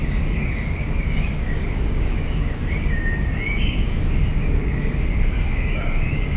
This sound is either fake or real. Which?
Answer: fake